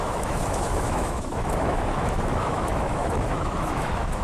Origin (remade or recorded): remade